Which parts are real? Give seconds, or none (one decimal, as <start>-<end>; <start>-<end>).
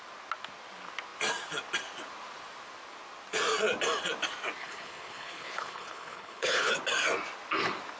0.0-4.6; 6.7-8.0